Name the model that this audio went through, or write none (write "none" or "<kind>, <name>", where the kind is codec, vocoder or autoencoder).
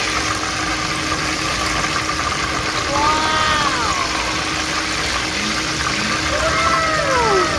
none